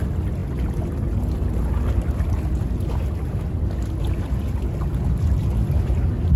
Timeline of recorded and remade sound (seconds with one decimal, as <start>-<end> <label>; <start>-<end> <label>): 0.0-6.4 recorded

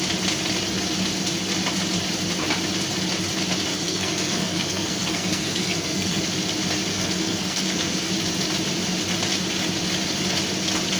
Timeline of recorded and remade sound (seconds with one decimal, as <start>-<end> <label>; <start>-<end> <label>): 0.0-3.7 recorded; 3.7-6.2 remade; 6.2-6.9 recorded; 6.9-8.1 remade; 8.1-11.0 recorded